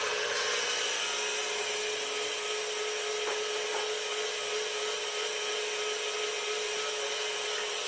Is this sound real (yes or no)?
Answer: yes